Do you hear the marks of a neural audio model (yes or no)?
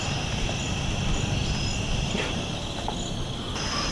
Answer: no